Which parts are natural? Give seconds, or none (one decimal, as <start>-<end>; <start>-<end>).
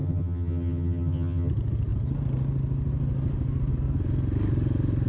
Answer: 1.5-5.1